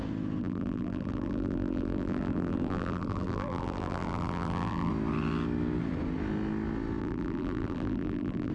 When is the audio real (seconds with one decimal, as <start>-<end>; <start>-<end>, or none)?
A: 0.0-0.4; 4.9-7.0